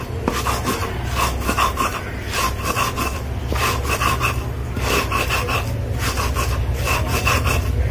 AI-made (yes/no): no